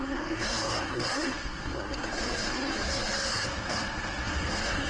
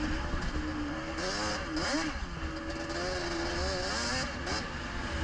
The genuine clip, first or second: second